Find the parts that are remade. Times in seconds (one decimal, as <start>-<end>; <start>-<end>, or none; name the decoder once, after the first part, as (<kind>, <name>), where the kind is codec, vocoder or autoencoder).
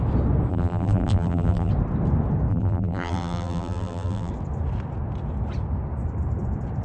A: 0.5-1.7 (vocoder, BigVGAN v2); 2.5-4.3